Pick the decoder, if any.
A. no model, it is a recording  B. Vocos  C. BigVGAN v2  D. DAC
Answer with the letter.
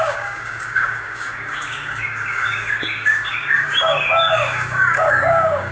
D